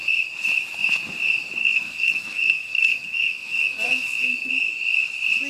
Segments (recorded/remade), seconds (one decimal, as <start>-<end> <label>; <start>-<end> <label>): 0.0-1.6 recorded; 1.6-4.5 remade; 4.5-5.5 recorded